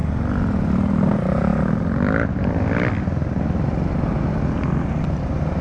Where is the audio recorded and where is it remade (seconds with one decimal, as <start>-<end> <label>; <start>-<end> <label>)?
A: 0.0-5.6 recorded